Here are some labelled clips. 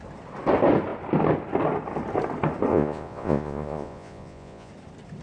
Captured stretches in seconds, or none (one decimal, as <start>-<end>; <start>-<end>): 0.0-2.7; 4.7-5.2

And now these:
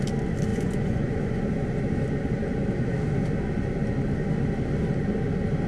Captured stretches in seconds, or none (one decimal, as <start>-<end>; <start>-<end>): 0.0-0.5; 1.4-5.7

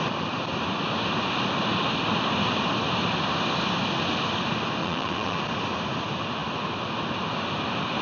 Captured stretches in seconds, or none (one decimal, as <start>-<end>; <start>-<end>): 0.0-4.8; 5.4-8.0